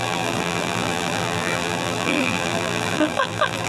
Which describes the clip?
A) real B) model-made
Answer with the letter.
B